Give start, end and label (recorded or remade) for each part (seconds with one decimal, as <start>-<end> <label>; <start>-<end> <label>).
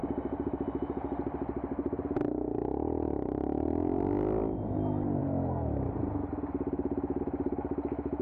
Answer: 0.0-8.2 recorded